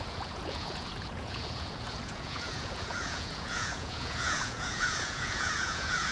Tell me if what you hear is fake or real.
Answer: fake